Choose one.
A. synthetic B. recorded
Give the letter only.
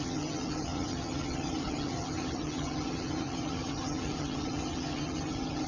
A